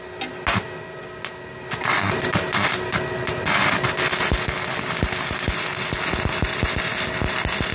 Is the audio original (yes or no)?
yes